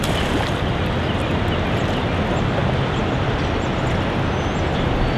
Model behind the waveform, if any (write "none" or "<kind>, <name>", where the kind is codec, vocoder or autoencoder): none